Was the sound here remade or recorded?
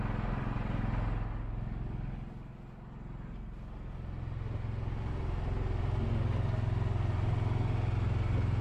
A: recorded